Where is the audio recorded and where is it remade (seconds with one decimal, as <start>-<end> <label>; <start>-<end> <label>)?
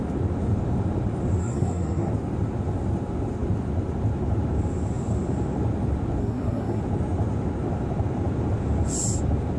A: 0.0-1.4 recorded; 1.4-2.1 remade; 2.1-6.2 recorded; 6.2-6.8 remade; 6.8-9.6 recorded